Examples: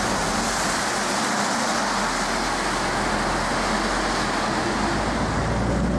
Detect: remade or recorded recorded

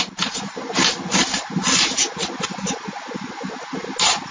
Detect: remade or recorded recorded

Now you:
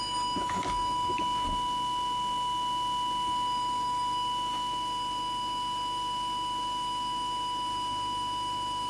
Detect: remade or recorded remade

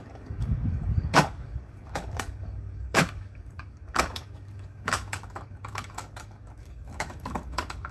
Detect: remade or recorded remade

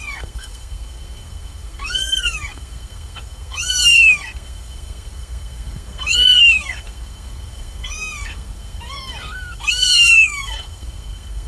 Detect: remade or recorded remade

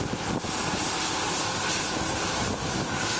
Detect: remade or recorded recorded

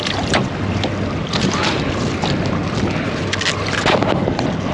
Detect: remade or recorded recorded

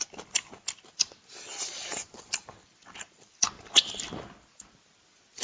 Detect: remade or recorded recorded